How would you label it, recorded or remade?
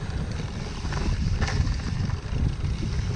remade